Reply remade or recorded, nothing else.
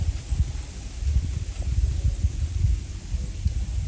recorded